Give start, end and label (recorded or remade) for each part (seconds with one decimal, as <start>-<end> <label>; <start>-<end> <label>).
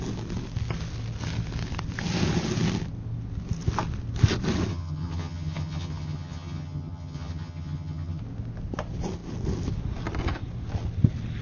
0.0-4.7 recorded; 4.7-8.2 remade; 8.2-11.4 recorded